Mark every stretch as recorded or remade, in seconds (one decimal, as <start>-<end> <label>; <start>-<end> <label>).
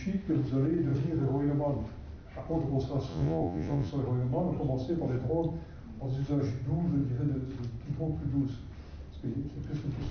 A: 0.0-3.1 recorded; 3.1-3.9 remade; 3.9-10.1 recorded